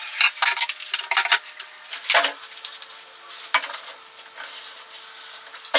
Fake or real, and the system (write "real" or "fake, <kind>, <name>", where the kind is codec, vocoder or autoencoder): real